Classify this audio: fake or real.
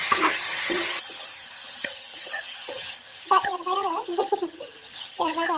fake